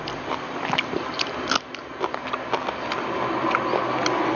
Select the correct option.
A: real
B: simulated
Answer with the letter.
A